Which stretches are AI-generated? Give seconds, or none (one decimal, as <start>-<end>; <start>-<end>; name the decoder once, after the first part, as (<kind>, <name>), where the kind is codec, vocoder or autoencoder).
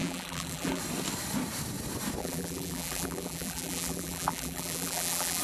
0.0-0.8 (vocoder, BigVGAN v2); 2.2-5.4